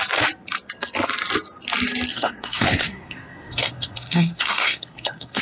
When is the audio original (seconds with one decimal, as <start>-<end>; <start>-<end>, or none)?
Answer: 0.0-2.1

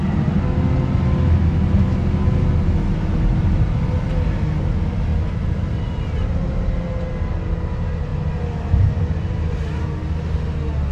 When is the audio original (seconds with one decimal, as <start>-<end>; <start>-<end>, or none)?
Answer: 0.0-10.9

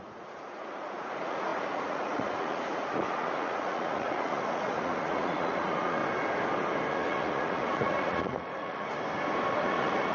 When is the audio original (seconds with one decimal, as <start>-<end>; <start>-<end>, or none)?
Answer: 6.0-6.9; 8.9-9.6

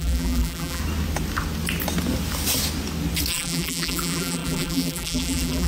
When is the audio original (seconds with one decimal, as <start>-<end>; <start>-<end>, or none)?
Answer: 0.8-3.3

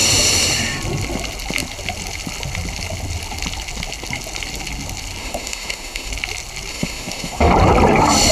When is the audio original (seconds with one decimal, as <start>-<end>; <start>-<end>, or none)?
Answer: 0.0-5.2; 6.1-6.7; 7.5-8.3

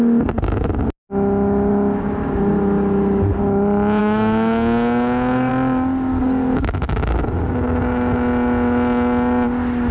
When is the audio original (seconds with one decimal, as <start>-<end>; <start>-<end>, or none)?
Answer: 0.0-4.0; 5.5-6.1; 7.0-9.9

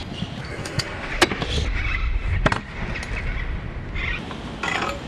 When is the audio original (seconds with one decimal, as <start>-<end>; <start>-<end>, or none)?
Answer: 0.0-0.5; 1.1-5.1

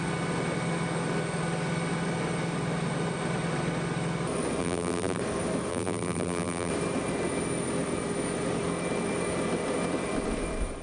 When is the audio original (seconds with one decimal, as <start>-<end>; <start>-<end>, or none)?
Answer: 0.0-4.6; 5.2-5.7; 6.7-10.8